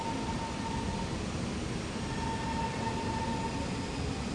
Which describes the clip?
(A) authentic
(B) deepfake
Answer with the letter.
A